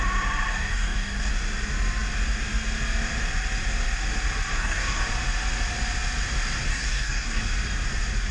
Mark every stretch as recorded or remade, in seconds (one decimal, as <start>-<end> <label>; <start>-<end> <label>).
0.0-0.5 recorded; 0.5-1.3 remade; 1.3-4.5 recorded; 4.5-5.0 remade; 5.0-6.7 recorded; 6.7-7.4 remade; 7.4-8.3 recorded